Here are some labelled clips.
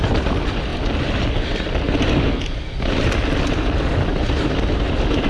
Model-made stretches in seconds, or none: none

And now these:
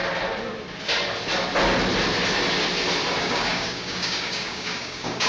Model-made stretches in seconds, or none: 3.2-5.3